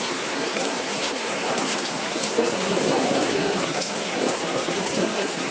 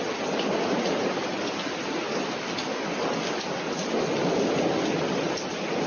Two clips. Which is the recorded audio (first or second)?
second